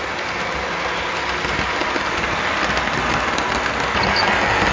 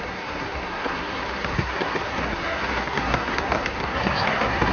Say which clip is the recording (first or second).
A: first